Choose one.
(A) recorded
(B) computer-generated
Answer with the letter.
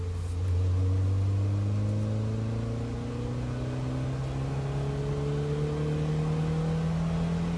A